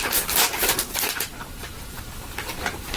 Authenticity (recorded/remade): remade